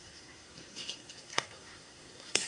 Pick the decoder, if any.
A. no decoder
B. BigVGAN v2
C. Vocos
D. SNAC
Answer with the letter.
D